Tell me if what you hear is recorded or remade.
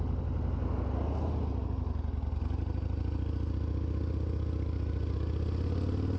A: recorded